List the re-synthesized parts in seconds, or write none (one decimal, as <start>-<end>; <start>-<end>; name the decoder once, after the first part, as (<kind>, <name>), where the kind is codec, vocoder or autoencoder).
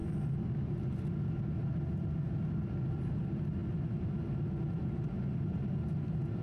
none